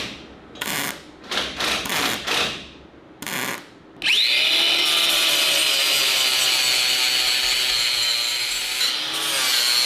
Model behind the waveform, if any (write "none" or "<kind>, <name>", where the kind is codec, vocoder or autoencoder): none